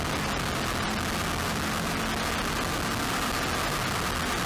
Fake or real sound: real